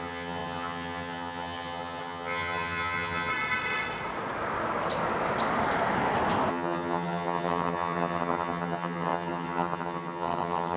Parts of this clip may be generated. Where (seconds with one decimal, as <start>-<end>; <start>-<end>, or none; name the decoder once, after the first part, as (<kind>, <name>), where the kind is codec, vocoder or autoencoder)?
0.0-3.3 (vocoder, HiFi-GAN); 6.5-10.8